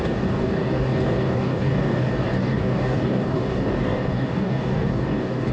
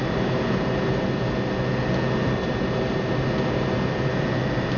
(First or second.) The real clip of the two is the second